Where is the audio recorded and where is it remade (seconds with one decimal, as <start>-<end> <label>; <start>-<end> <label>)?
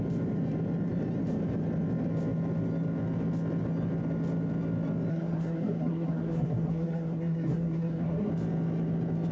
0.0-5.1 recorded; 5.1-8.3 remade; 8.3-9.3 recorded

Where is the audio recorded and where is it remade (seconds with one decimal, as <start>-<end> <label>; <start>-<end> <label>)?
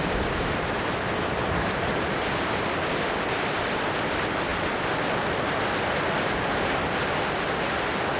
0.0-8.2 recorded